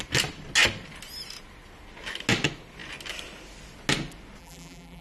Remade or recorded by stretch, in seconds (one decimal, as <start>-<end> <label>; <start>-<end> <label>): 0.0-4.4 recorded; 4.4-5.0 remade